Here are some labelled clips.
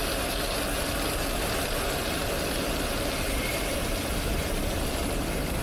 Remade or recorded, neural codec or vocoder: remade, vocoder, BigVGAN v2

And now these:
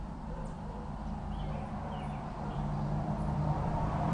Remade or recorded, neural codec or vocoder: remade, vocoder, BigVGAN v2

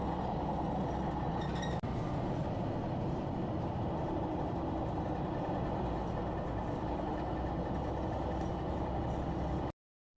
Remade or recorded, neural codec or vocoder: recorded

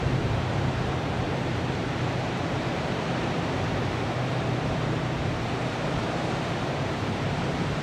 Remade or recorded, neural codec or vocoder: remade, vocoder, BigVGAN v2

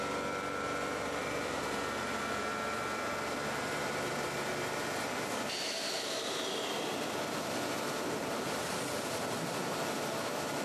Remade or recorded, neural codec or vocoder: remade, vocoder, BigVGAN v2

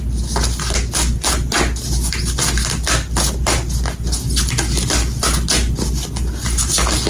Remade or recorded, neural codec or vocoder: recorded